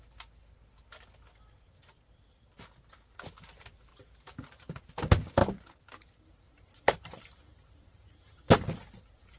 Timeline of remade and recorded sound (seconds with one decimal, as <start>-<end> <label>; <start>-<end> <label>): 0.0-3.9 recorded; 3.9-4.8 remade; 4.8-5.4 recorded; 5.4-8.8 remade; 8.8-9.4 recorded